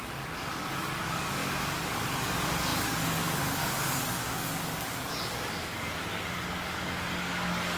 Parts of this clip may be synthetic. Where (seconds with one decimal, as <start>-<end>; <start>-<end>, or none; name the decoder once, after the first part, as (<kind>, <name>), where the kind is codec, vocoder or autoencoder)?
0.0-7.8 (codec, DAC)